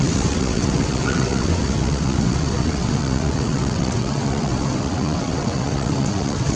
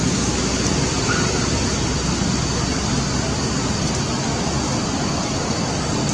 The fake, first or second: first